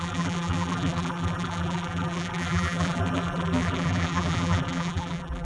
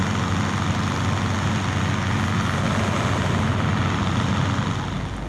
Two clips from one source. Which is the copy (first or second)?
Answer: first